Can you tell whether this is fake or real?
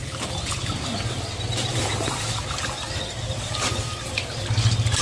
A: real